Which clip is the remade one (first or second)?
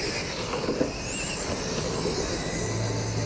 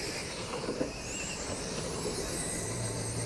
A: second